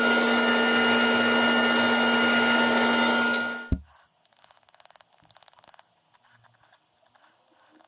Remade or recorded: recorded